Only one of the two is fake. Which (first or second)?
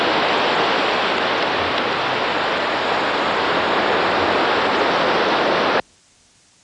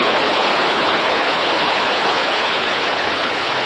second